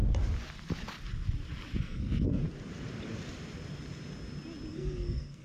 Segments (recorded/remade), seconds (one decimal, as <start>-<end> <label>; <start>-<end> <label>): 0.0-1.8 recorded; 1.8-2.4 remade; 2.4-4.7 recorded; 4.7-5.4 remade